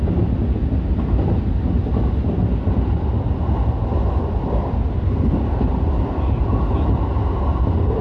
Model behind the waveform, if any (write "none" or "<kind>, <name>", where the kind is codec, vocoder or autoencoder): none